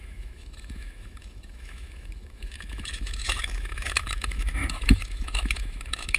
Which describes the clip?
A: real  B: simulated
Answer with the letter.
B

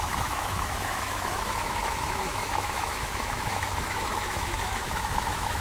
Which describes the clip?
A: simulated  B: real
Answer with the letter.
A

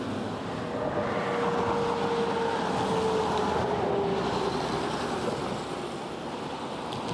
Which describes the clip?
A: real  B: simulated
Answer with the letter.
A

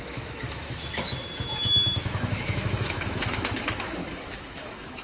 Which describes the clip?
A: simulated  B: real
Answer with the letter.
A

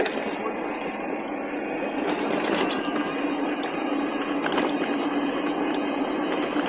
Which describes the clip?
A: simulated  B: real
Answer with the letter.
B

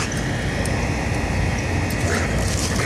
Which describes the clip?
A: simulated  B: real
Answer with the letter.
B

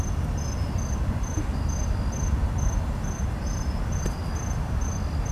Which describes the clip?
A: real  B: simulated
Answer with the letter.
A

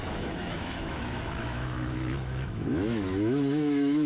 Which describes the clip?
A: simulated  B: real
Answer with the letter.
A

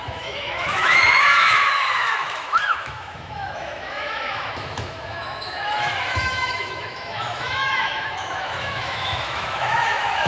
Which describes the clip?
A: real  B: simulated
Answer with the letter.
B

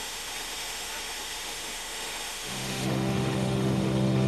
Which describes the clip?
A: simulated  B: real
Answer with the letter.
A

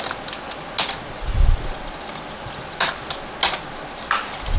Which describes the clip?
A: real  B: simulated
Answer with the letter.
A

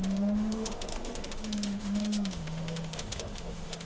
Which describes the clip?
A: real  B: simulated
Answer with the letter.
B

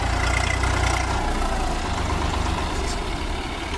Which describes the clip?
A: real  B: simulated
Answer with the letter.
A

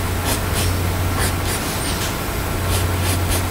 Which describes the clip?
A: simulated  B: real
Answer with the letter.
B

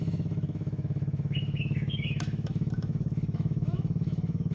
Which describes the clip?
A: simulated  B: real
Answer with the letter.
A